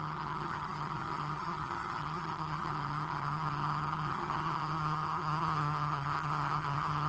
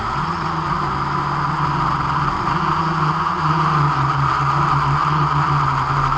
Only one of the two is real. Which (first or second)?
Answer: second